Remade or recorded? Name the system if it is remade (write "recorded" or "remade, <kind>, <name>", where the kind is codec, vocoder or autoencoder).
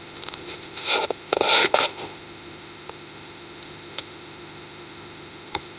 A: remade, autoencoder, DAC-VAE